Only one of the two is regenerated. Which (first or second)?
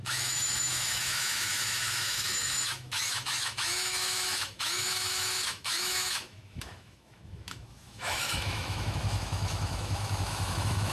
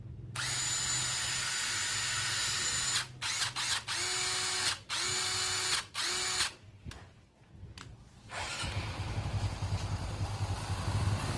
first